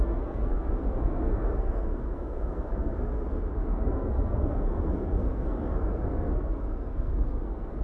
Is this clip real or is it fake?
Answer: fake